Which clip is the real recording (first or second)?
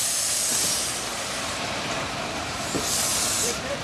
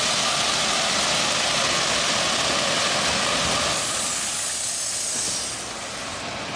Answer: second